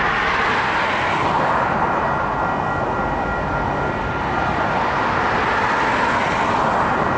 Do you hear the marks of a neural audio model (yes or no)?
no